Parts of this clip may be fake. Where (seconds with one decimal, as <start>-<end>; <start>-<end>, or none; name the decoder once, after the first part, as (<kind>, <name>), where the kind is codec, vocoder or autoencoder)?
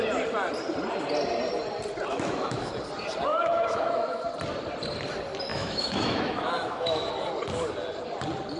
2.1-2.7 (autoencoder, DAC-VAE); 3.3-4.3; 5.5-7.1